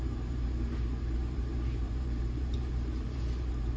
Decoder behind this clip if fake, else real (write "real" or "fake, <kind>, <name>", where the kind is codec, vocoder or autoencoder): fake, vocoder, BigVGAN v2